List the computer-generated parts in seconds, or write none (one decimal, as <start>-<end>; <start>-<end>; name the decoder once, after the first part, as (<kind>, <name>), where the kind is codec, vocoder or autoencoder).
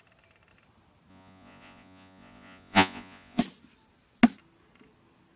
1.1-3.4 (vocoder, Vocos)